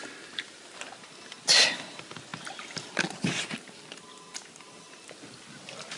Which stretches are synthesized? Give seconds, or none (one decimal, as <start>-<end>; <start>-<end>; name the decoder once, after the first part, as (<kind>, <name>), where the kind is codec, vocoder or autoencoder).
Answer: none